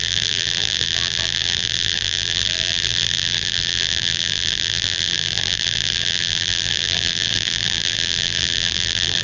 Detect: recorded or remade remade